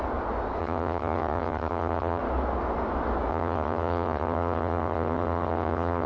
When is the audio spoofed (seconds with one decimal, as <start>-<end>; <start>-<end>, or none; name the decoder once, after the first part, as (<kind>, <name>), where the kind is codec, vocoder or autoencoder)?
0.6-2.2 (vocoder, HiFi-GAN); 3.3-6.1